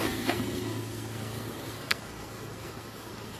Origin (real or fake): fake